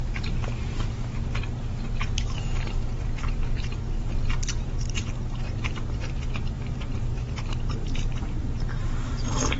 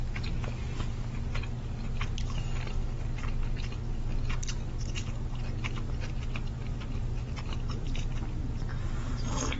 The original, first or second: second